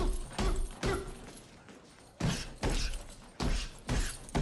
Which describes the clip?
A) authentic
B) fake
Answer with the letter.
A